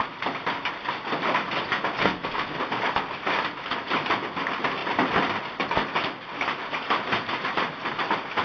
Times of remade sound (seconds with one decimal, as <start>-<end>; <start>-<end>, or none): 2.0-2.6